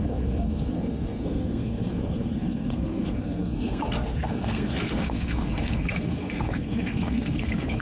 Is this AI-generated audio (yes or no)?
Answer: yes